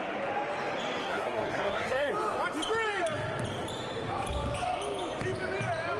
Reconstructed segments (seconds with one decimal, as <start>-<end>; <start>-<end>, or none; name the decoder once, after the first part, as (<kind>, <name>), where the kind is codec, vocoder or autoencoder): 1.0-2.1 (codec, SNAC)